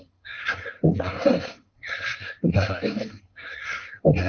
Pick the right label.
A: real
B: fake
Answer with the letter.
B